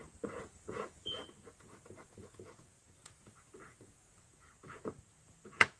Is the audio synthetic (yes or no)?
yes